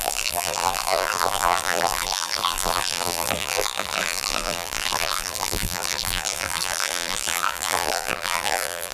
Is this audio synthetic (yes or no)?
yes